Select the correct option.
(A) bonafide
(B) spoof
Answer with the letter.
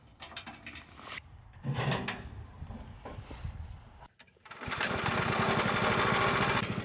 A